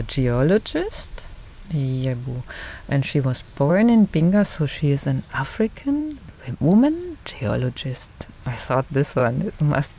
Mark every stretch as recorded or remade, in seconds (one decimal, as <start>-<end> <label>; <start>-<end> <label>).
0.0-2.6 recorded; 2.6-3.7 remade; 3.7-6.0 recorded; 6.0-6.6 remade; 6.6-10.0 recorded